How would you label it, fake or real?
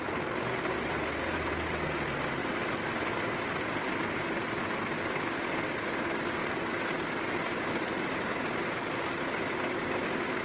real